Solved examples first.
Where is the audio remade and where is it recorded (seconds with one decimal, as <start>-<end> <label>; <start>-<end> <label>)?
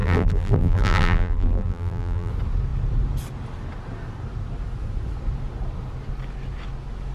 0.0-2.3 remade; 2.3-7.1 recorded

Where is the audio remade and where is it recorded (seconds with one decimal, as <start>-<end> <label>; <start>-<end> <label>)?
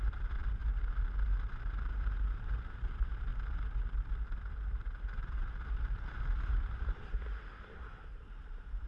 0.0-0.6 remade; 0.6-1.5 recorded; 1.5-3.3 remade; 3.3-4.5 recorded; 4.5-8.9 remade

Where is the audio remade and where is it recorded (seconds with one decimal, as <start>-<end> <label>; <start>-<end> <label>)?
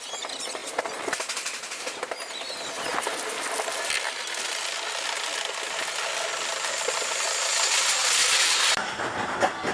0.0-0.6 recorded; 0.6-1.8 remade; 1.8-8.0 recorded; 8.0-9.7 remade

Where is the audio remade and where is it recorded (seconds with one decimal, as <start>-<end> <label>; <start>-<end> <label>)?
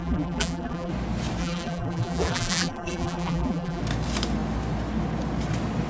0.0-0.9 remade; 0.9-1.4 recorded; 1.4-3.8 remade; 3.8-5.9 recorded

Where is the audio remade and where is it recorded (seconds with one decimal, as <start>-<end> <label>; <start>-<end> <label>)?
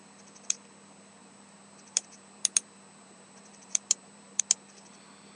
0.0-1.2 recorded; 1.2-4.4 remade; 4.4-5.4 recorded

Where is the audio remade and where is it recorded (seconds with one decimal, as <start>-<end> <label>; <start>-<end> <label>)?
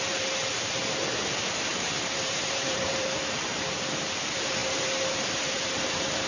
0.0-0.8 remade; 0.8-1.7 recorded; 1.7-6.3 remade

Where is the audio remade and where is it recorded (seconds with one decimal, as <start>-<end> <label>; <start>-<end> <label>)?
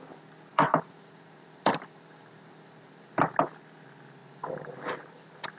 0.0-0.5 recorded; 0.5-3.1 remade; 3.1-4.2 recorded; 4.2-5.6 remade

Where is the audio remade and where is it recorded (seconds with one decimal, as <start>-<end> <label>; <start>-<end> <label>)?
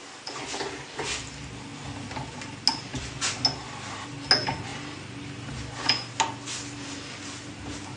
0.0-4.7 recorded; 4.7-6.1 remade; 6.1-8.0 recorded